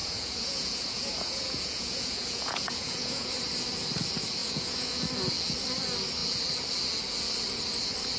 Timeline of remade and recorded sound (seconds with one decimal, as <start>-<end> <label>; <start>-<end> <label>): 0.0-3.3 remade; 3.3-4.4 recorded; 4.4-5.0 remade; 5.0-8.2 recorded

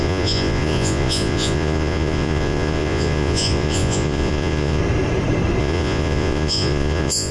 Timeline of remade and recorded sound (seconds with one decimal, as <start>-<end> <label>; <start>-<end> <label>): 0.0-4.8 remade; 4.8-5.6 recorded; 5.6-7.3 remade